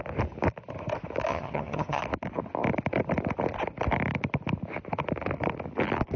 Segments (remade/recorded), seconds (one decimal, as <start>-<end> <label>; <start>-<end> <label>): 0.0-1.3 recorded; 1.3-2.0 remade; 2.0-6.2 recorded